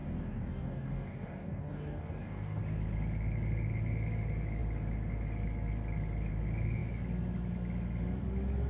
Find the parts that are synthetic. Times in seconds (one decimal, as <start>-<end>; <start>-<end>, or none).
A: 0.0-2.6